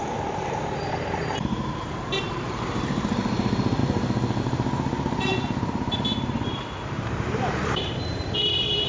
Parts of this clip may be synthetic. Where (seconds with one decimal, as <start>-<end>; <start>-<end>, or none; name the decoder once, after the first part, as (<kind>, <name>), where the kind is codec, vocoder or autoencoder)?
0.0-3.8 (vocoder, BigVGAN v2); 4.4-8.9